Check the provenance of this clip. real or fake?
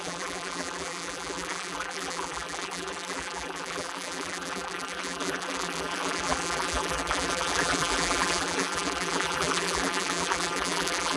fake